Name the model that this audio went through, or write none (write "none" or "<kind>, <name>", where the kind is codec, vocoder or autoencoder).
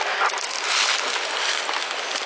none